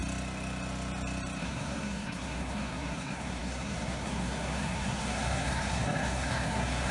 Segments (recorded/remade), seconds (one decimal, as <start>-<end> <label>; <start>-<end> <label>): 0.0-1.4 recorded; 1.4-6.9 remade